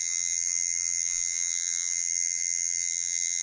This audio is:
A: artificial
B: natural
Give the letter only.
A